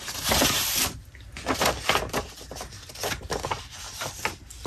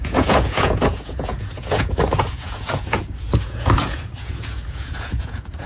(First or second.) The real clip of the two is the first